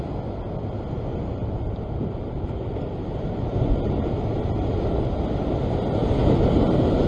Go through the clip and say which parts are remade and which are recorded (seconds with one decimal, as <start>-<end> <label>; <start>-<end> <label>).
0.0-1.1 recorded; 1.1-5.2 remade; 5.2-6.0 recorded; 6.0-7.1 remade